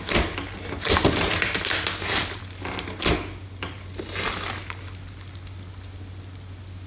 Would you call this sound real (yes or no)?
yes